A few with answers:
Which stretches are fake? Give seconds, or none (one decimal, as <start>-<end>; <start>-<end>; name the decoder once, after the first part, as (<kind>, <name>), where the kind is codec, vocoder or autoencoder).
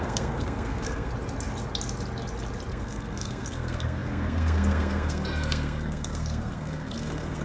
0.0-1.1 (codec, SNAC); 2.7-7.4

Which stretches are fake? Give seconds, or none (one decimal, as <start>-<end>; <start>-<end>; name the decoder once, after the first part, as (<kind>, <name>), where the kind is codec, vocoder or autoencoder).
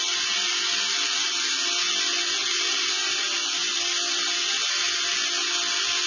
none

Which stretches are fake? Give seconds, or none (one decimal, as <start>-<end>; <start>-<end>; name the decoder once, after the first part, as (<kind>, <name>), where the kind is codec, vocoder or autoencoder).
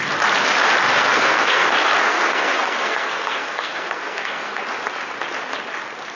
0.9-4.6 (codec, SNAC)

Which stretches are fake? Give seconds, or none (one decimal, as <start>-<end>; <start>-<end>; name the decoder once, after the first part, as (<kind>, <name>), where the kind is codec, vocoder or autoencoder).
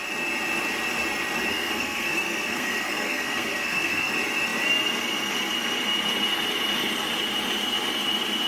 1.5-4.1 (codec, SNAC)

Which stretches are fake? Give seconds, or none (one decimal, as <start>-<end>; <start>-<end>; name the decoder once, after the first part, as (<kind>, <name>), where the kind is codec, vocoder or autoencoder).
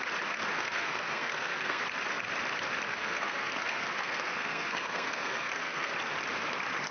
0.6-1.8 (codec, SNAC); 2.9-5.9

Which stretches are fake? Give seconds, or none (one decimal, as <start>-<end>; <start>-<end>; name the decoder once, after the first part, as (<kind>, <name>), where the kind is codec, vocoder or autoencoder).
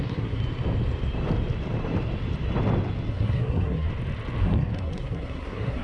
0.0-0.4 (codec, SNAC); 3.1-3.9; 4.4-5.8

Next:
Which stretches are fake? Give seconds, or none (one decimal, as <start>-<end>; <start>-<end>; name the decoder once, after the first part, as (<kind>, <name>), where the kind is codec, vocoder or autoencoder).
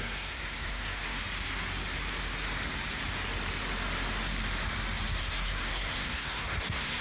0.0-1.2 (codec, SNAC); 5.1-7.0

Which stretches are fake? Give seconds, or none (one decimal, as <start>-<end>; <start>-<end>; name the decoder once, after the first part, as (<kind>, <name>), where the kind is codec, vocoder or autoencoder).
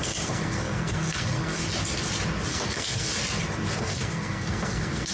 0.0-1.6 (codec, SNAC); 2.5-3.1; 3.8-5.1